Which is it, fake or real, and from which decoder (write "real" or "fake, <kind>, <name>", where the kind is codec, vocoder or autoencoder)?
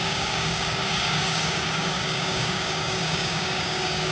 fake, codec, DAC